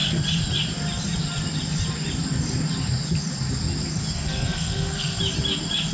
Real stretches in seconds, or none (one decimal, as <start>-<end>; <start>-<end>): 0.0-4.1; 5.2-5.9